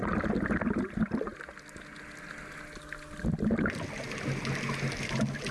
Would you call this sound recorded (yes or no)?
yes